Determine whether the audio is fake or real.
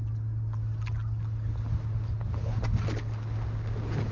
real